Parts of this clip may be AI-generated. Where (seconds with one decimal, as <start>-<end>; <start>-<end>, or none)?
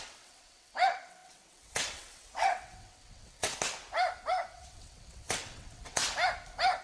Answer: 0.0-3.5; 4.5-6.0